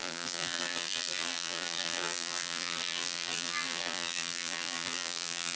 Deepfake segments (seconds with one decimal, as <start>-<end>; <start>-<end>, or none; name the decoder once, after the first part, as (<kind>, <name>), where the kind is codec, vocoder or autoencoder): 0.0-5.6 (vocoder, BigVGAN v2)